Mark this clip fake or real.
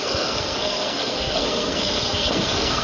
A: fake